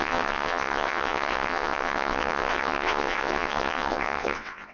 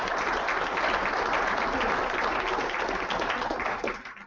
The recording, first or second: second